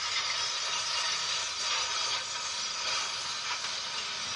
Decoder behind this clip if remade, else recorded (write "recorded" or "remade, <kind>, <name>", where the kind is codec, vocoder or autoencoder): recorded